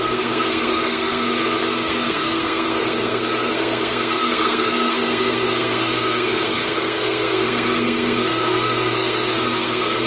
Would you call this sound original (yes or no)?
no